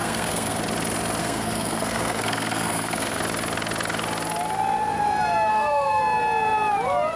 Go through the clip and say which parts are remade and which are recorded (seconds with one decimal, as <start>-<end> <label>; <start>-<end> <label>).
0.0-0.6 remade; 0.6-1.2 recorded; 1.2-3.2 remade; 3.2-5.5 recorded; 5.5-6.0 remade; 6.0-7.2 recorded